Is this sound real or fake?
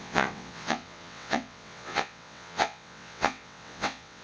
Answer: fake